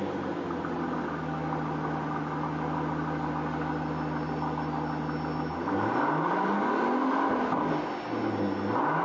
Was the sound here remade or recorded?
recorded